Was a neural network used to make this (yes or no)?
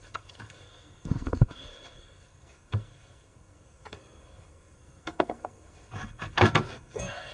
yes